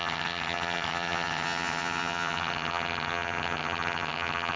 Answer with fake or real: fake